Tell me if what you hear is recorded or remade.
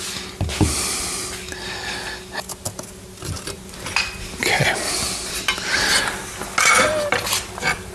recorded